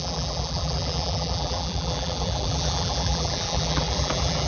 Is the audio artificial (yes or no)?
yes